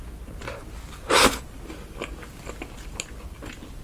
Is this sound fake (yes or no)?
no